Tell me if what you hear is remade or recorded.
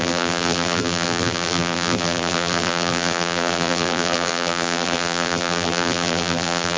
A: remade